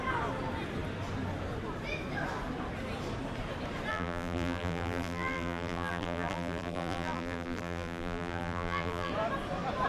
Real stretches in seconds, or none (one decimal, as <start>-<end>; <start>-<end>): 0.0-3.9; 9.1-9.9